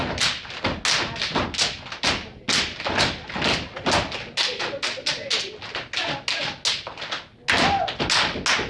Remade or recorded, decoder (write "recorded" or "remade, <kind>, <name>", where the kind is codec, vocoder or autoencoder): recorded